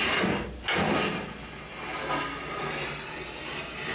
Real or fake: real